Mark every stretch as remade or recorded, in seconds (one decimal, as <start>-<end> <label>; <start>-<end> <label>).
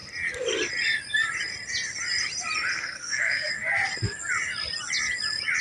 0.0-2.7 recorded; 2.7-3.5 remade; 3.5-5.6 recorded